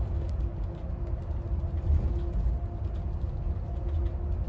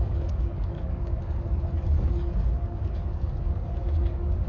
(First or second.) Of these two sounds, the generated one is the second